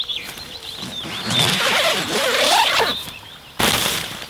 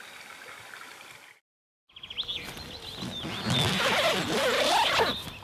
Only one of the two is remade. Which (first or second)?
first